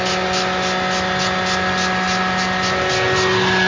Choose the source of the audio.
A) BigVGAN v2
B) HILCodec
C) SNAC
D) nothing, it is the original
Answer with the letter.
D